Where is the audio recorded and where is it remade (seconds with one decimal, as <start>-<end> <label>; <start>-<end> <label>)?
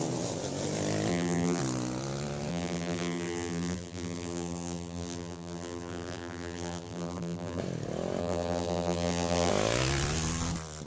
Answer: 0.0-1.1 recorded; 1.1-1.6 remade; 1.6-2.5 recorded; 2.5-7.6 remade; 7.6-8.2 recorded; 8.2-9.5 remade; 9.5-10.9 recorded